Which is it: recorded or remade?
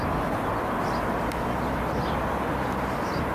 recorded